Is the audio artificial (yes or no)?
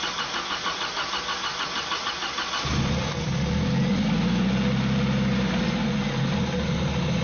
no